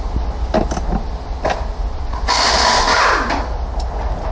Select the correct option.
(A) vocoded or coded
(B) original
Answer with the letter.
B